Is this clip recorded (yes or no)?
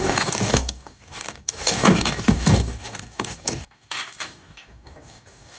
no